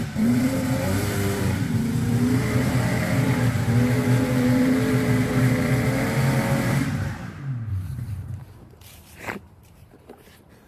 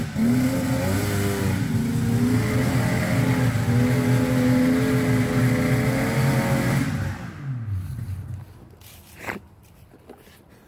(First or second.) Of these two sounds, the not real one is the first